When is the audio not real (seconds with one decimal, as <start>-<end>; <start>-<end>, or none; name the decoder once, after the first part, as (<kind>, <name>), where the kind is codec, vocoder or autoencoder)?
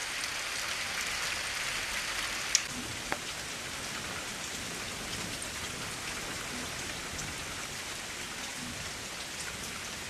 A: none